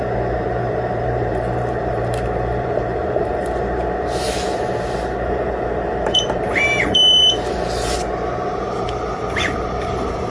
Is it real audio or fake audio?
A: fake